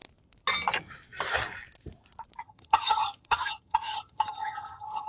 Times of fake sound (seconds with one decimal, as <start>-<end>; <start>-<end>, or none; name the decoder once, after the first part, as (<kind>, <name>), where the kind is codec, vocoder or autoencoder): 2.4-5.1 (vocoder, HiFi-GAN)